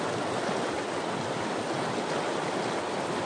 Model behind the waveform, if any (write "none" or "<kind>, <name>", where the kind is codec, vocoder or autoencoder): none